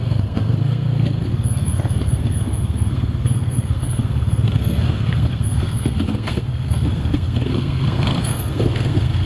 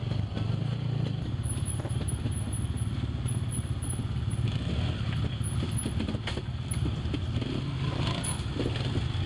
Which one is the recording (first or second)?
second